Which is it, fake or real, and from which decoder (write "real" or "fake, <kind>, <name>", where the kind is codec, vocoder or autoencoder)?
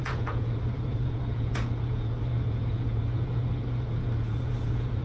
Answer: fake, vocoder, Vocos